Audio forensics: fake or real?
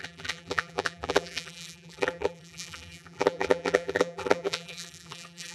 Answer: fake